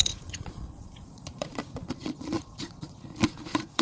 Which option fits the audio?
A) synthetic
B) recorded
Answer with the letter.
A